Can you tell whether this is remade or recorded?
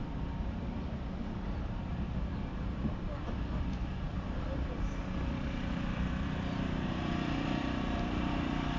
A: remade